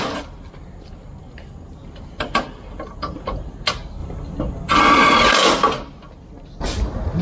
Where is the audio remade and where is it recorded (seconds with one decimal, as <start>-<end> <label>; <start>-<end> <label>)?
0.0-7.2 recorded